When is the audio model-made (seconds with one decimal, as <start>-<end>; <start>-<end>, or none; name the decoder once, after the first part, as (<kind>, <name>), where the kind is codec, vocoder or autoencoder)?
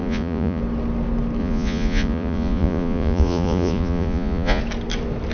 0.0-0.6 (vocoder, Vocos); 1.4-4.6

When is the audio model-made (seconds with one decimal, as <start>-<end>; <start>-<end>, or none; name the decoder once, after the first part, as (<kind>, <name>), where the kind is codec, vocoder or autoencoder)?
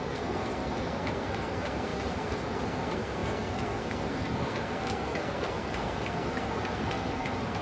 0.0-7.6 (codec, SNAC)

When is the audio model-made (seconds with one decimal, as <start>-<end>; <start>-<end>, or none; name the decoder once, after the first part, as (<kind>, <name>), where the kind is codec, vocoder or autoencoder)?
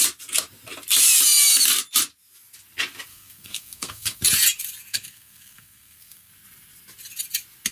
3.1-4.2 (codec, SNAC); 4.9-6.3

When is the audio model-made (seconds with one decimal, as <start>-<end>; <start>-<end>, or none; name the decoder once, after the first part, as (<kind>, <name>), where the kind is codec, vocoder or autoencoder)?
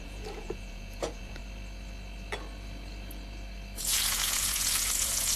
0.0-1.4 (vocoder, Vocos); 3.8-5.4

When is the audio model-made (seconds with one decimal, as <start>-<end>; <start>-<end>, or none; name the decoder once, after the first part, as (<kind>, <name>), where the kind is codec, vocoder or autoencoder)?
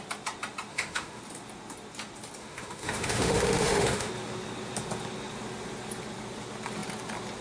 0.7-1.2 (autoencoder, DAC-VAE); 2.4-4.1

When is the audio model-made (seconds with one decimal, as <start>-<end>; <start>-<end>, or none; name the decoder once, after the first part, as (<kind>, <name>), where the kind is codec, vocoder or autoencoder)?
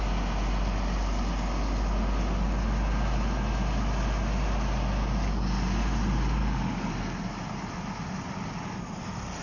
6.4-6.9 (codec, DAC)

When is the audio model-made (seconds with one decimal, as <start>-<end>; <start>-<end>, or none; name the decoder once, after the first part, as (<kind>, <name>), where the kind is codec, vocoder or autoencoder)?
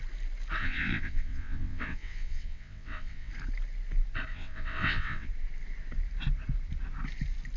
0.6-3.3 (vocoder, WaveNeXt); 4.3-5.3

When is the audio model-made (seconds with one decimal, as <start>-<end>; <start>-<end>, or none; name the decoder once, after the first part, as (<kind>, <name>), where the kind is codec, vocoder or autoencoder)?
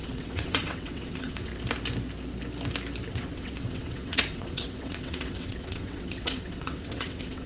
0.0-1.5 (vocoder, WaveNeXt); 3.1-7.5